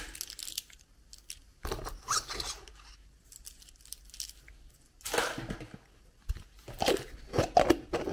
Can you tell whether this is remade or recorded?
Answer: recorded